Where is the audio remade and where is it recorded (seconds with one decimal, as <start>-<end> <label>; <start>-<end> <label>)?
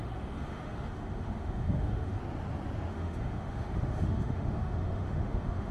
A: 0.0-2.2 remade; 2.2-2.9 recorded; 2.9-5.7 remade